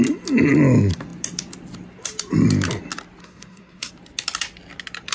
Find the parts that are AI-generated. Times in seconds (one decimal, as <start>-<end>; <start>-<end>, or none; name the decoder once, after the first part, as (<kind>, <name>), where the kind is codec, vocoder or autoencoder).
3.2-3.9 (codec, SNAC)